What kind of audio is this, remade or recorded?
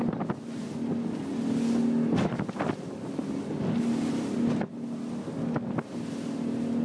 recorded